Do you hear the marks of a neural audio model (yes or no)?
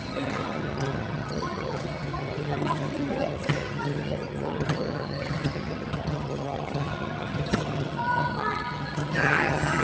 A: yes